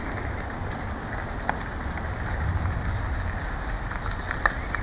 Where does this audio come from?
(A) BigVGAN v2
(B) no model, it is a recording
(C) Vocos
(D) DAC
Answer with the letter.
B